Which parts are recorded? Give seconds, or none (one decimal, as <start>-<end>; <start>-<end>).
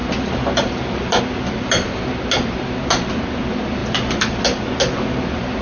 1.2-3.8; 4.4-5.6